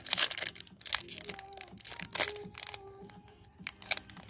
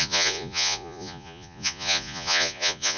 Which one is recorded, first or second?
first